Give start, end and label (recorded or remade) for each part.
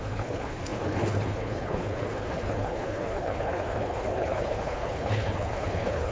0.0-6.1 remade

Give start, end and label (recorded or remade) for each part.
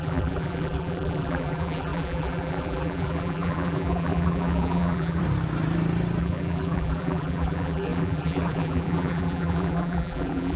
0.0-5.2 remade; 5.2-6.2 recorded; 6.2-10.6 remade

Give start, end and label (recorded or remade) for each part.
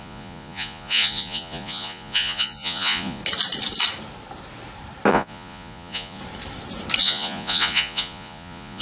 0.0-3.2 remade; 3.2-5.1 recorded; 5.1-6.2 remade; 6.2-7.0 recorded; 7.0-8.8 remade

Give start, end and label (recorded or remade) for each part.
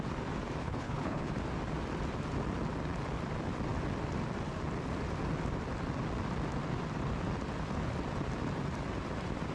0.0-0.6 recorded; 0.6-1.3 remade; 1.3-9.5 recorded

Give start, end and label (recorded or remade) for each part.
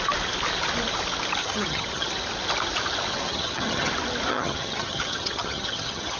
0.0-1.4 recorded; 1.4-2.1 remade; 2.1-3.1 recorded; 3.1-3.9 remade; 3.9-4.3 recorded; 4.3-6.2 remade